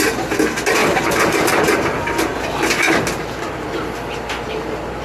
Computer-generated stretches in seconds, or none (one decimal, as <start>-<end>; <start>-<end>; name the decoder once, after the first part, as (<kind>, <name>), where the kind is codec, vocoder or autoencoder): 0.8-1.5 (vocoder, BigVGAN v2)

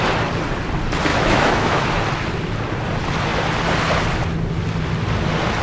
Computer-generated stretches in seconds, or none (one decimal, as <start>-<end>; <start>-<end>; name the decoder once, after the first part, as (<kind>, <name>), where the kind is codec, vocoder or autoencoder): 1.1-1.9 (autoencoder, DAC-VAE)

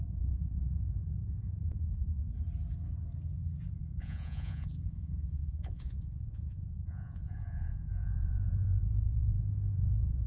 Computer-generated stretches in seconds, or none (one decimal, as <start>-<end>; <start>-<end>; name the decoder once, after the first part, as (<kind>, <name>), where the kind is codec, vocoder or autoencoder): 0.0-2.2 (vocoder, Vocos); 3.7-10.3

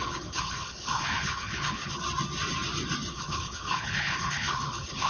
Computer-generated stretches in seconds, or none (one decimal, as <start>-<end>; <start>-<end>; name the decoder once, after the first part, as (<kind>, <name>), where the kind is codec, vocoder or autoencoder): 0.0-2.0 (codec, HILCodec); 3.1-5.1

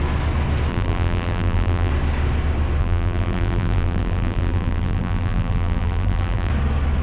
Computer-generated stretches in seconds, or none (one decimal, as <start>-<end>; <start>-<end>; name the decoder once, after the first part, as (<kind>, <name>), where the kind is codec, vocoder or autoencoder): 0.7-1.9 (vocoder, BigVGAN v2); 2.8-6.5

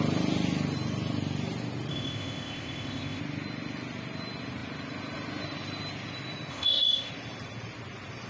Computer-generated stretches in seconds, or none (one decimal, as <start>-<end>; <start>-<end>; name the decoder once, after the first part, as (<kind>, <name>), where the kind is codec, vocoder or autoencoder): 1.9-3.2 (codec, ZipCodec); 6.5-7.1

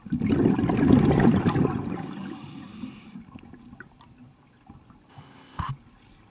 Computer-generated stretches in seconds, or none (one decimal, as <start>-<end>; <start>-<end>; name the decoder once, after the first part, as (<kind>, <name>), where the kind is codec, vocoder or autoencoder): 5.1-5.7 (codec, ZipCodec)

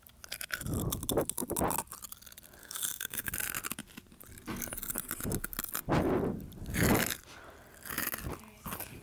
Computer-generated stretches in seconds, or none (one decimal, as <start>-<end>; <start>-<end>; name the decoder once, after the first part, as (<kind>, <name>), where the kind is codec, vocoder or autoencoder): 2.6-3.3 (codec, SNAC)